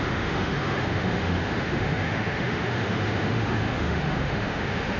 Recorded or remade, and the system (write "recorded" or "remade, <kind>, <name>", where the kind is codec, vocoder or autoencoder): remade, autoencoder, DAC-VAE